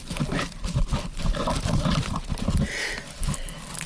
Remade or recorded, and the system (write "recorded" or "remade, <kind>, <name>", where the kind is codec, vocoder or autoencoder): recorded